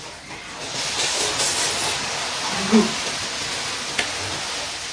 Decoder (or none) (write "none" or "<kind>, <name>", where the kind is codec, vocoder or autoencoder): none